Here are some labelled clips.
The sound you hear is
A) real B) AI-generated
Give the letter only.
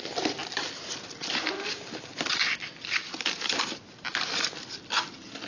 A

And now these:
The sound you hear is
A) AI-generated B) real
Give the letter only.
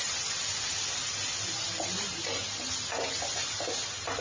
B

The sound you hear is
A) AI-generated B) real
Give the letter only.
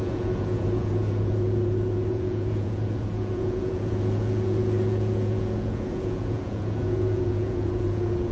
A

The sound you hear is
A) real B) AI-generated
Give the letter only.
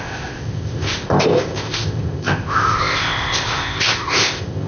B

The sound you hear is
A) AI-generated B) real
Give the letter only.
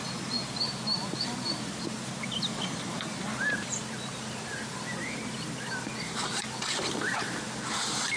A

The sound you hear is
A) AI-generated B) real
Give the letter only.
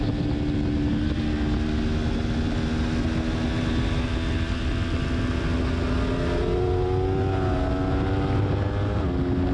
B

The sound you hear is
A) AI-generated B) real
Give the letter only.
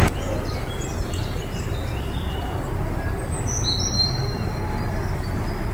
B